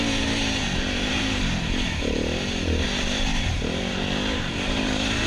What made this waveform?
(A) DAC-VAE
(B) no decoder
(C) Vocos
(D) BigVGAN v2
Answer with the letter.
D